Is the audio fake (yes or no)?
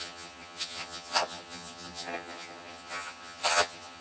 yes